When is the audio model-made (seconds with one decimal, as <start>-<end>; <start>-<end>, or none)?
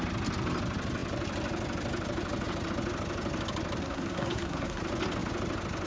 3.8-4.8